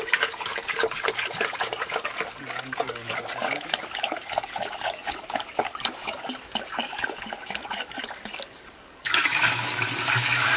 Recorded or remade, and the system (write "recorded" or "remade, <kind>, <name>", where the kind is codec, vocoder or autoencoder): remade, codec, DAC